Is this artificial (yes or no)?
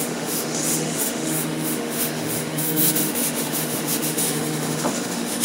yes